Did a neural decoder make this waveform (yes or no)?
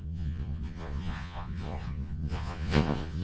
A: yes